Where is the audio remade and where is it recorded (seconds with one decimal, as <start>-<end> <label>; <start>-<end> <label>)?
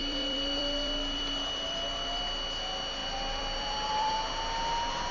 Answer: 0.0-2.2 remade; 2.2-3.0 recorded; 3.0-4.1 remade; 4.1-5.1 recorded